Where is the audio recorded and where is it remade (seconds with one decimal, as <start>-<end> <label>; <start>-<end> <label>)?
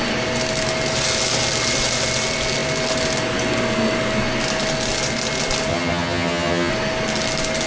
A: 0.0-5.7 recorded; 5.7-6.7 remade; 6.7-7.7 recorded